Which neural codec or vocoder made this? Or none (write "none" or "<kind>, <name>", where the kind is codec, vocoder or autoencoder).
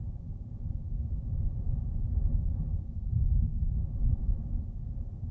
vocoder, BigVGAN v2